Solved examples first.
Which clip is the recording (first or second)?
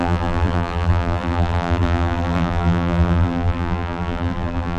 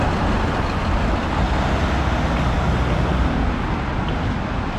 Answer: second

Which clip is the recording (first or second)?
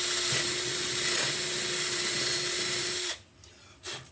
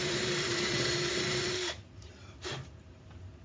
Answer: first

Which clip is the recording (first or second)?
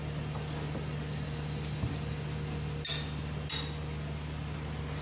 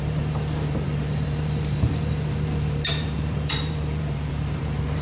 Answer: first